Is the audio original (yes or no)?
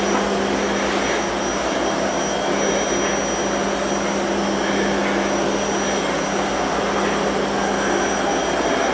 yes